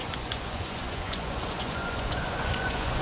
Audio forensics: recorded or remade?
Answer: remade